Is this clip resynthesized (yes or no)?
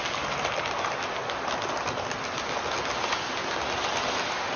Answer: no